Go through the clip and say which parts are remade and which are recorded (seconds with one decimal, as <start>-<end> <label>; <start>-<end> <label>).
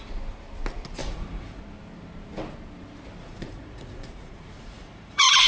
0.0-1.0 recorded; 1.0-1.6 remade; 1.6-3.2 recorded; 3.2-5.5 remade